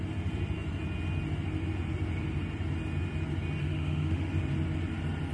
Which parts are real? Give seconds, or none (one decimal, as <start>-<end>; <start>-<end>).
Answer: 0.0-3.6; 4.3-5.3